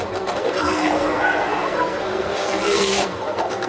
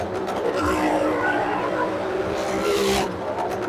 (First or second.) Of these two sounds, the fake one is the first